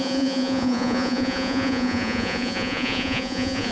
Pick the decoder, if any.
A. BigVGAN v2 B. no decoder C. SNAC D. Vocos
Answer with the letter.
D